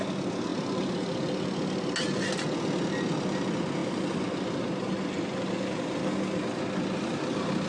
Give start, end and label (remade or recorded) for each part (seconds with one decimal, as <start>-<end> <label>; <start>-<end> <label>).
0.0-7.7 recorded